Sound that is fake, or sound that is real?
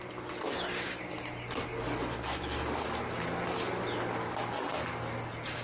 real